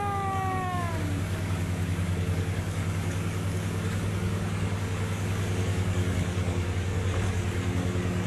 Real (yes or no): no